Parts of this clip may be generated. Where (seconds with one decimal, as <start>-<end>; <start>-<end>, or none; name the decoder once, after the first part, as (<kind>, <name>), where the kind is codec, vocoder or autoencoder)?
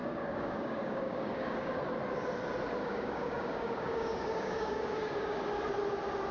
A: 0.0-1.8 (codec, DAC); 2.8-5.4